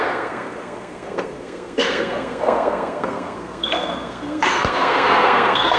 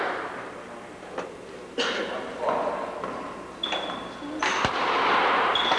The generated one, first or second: first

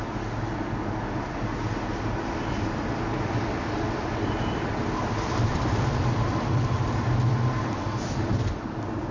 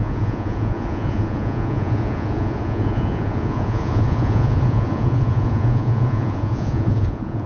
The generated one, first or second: second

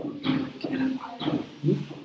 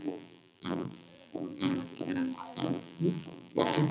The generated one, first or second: second